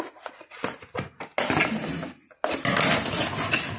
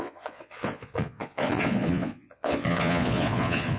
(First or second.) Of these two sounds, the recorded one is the first